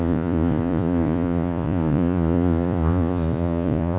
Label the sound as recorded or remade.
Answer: remade